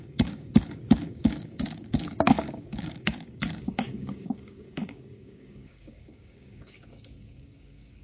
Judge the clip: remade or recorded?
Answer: remade